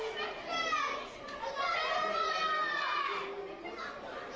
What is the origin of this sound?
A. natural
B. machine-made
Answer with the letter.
A